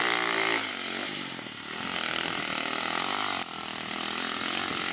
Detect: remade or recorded recorded